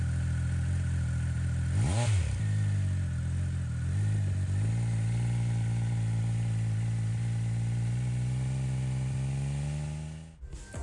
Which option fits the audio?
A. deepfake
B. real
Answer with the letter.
B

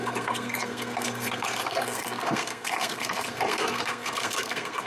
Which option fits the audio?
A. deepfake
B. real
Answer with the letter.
A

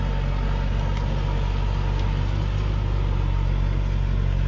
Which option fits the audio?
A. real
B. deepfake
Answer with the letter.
A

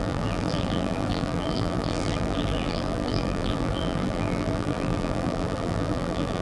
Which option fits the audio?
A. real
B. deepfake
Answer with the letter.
B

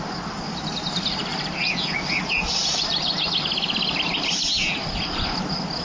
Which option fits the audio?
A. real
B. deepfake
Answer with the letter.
A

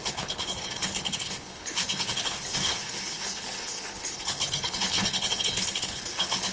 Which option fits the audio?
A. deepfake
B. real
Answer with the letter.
A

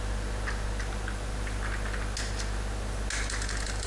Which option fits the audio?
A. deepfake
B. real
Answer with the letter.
B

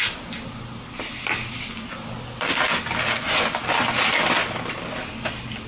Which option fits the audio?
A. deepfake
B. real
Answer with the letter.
B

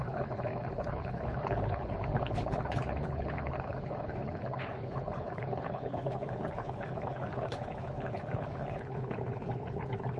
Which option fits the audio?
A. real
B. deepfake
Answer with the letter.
B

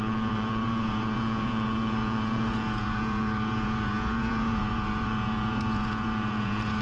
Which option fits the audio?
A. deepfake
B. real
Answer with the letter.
A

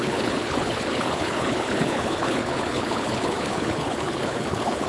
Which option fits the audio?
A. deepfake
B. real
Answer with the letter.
A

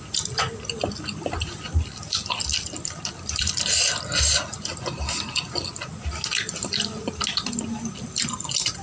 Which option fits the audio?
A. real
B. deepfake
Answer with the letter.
A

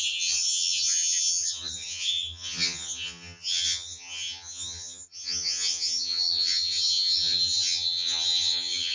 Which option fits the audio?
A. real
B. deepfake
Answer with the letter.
B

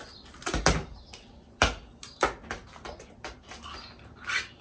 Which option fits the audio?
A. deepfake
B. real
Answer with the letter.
B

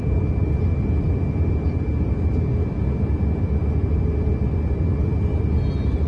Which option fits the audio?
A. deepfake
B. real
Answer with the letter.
B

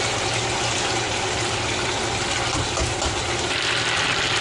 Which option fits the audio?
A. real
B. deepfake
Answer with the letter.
A